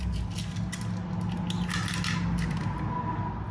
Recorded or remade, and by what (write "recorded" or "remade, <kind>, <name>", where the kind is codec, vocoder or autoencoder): recorded